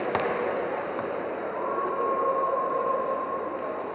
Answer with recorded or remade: recorded